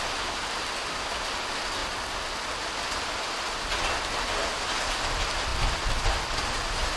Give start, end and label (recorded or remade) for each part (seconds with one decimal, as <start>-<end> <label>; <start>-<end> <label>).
0.0-7.0 recorded